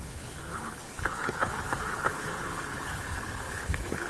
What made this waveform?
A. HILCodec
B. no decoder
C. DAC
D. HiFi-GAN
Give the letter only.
A